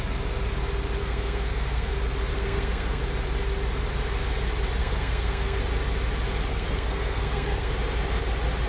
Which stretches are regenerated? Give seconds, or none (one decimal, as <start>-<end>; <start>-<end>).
1.0-1.9; 2.3-3.0; 4.8-5.6; 6.5-7.7